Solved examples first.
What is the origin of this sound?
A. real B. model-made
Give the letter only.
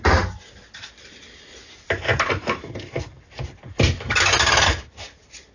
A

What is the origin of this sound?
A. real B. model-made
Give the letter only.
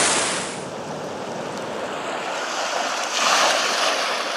A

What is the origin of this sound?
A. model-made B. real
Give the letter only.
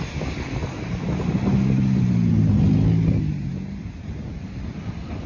B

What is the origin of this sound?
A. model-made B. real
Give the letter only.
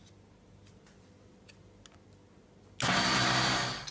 B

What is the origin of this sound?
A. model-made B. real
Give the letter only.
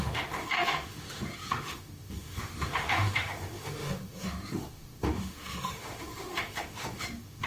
A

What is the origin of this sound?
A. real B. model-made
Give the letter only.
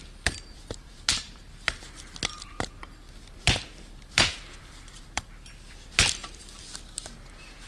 B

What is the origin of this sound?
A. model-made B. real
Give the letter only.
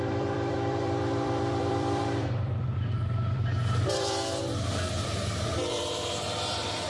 A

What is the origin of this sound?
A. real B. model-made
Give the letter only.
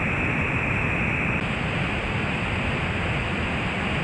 A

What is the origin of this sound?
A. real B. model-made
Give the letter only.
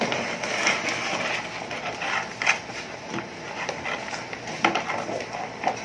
A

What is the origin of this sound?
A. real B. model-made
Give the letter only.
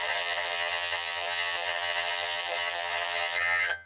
B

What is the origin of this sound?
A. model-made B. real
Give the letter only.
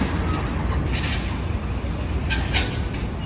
B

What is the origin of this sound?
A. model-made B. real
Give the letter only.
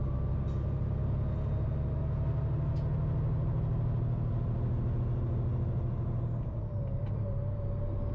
B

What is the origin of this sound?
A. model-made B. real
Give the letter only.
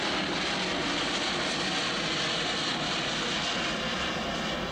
B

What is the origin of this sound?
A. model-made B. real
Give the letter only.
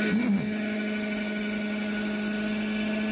B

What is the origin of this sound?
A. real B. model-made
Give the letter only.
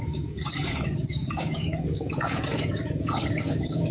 B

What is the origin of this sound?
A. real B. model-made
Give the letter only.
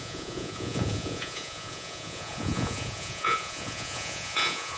B